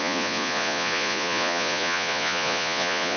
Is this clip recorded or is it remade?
remade